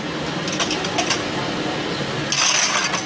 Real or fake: real